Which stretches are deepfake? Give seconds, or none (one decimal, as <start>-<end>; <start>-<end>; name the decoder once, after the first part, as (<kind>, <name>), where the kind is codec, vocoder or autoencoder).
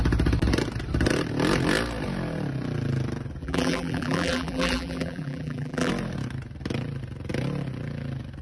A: 3.4-5.9 (vocoder, BigVGAN v2)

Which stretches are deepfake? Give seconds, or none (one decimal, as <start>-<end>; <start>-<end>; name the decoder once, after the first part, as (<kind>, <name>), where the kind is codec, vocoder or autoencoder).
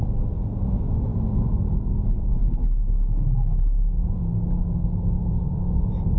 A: none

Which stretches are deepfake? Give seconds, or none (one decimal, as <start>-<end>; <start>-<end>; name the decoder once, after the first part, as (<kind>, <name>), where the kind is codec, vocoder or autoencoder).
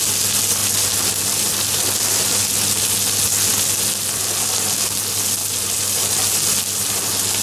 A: none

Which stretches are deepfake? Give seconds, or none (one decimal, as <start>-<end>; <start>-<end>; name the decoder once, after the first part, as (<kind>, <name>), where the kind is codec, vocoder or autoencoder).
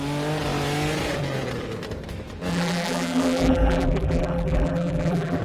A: 2.5-5.4 (vocoder, BigVGAN v2)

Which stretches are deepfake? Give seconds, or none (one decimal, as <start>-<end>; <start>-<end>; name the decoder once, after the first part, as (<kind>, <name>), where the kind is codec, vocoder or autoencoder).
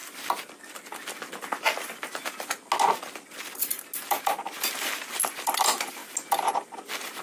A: none